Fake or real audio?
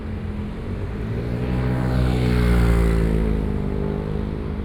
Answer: real